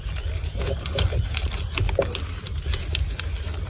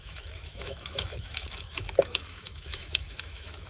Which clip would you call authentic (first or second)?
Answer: first